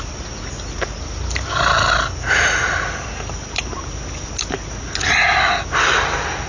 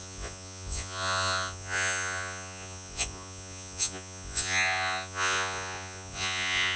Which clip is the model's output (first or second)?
second